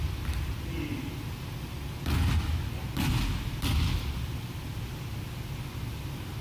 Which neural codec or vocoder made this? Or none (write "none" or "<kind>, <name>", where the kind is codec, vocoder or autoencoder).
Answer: none